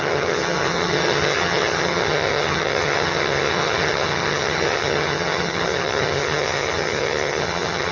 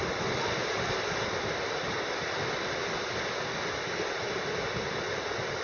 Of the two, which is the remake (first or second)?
first